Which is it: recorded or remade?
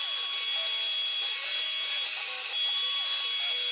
recorded